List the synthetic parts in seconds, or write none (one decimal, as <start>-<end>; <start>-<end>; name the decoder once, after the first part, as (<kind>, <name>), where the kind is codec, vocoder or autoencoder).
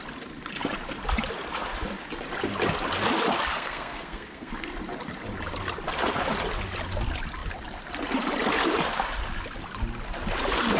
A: 3.5-4.5 (codec, SNAC)